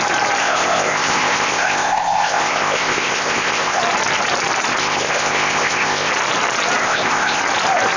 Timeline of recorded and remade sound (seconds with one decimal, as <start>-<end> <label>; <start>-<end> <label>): 0.0-0.4 recorded; 0.4-3.8 remade; 3.8-4.8 recorded; 4.8-6.1 remade; 6.1-6.8 recorded; 6.8-7.4 remade; 7.4-8.0 recorded

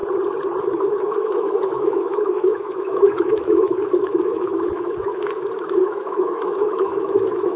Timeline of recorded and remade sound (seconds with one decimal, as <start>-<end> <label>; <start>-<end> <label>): 0.0-0.6 recorded; 0.6-7.6 remade